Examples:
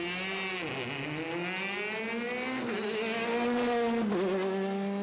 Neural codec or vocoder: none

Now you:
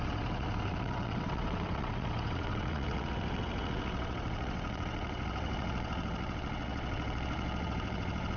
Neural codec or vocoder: vocoder, WaveNeXt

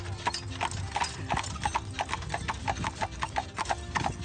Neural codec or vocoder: none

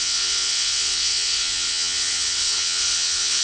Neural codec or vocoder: vocoder, WaveNeXt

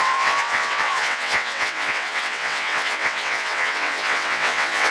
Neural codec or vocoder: vocoder, WaveNeXt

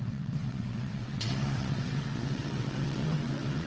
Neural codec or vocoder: vocoder, WaveNeXt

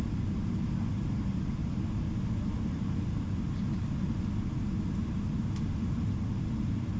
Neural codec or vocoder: none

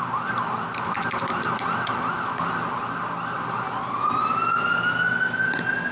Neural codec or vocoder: none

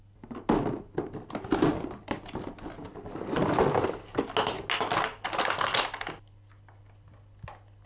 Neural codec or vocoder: none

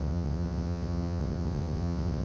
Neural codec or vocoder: vocoder, WaveNeXt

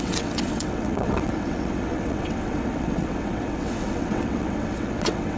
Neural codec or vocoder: vocoder, WaveNeXt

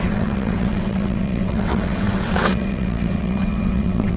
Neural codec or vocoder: vocoder, WaveNeXt